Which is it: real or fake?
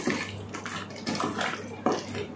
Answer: real